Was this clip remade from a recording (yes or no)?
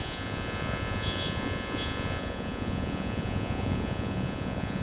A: yes